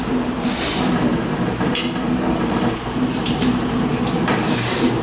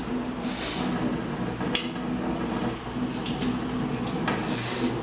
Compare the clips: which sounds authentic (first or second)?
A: second